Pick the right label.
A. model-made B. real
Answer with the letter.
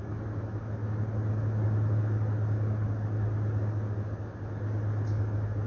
B